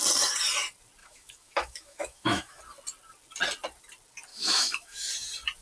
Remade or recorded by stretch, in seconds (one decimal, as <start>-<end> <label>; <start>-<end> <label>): 0.0-1.0 recorded; 1.0-2.6 remade; 2.6-4.3 recorded; 4.3-5.1 remade; 5.1-5.6 recorded

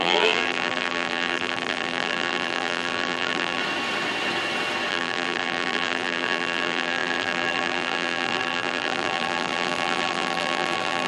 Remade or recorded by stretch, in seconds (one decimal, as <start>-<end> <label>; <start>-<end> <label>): 0.0-3.6 remade; 3.6-4.9 recorded; 4.9-11.1 remade

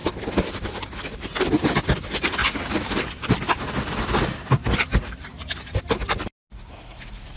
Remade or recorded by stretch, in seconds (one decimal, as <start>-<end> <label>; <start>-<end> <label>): 0.0-2.4 recorded; 2.4-3.4 remade; 3.4-4.6 recorded; 4.6-5.8 remade; 5.8-7.4 recorded

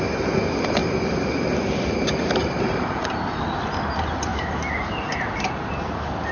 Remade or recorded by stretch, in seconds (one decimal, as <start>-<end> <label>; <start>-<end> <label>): 0.0-2.4 recorded; 2.4-3.0 remade; 3.0-4.3 recorded; 4.3-5.0 remade; 5.0-6.3 recorded

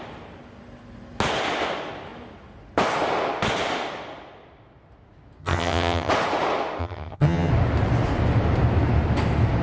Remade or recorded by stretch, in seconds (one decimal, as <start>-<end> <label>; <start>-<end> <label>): 0.0-5.4 recorded; 5.4-6.1 remade; 6.1-6.8 recorded; 6.8-7.5 remade; 7.5-9.6 recorded

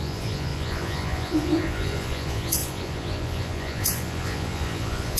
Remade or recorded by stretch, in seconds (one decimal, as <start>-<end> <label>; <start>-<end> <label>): 0.0-5.2 remade